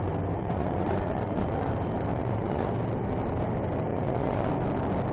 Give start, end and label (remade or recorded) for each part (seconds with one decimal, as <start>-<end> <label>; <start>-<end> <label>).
0.0-0.4 recorded; 0.4-1.7 remade; 1.7-2.1 recorded; 2.1-2.7 remade; 2.7-3.9 recorded; 3.9-4.5 remade; 4.5-5.1 recorded